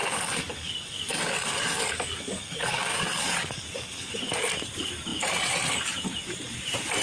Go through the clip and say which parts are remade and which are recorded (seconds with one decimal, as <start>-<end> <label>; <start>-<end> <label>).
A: 0.0-4.2 remade; 4.2-7.0 recorded